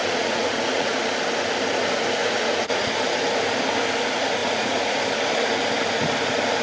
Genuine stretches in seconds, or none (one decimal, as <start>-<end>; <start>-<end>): 1.0-2.2; 2.9-4.4; 5.0-6.6